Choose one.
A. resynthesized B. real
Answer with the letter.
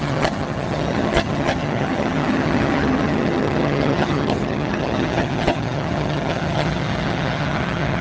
A